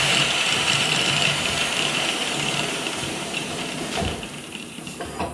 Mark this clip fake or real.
fake